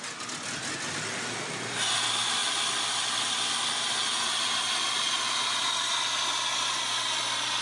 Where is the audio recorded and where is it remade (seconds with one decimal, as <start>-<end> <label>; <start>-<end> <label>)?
0.0-7.6 recorded